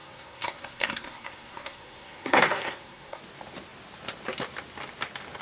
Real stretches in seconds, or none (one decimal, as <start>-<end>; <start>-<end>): 3.2-5.4